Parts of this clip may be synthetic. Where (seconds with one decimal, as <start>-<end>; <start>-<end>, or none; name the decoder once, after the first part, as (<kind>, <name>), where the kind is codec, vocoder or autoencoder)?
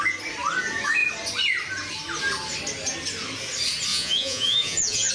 3.9-5.1 (vocoder, Vocos)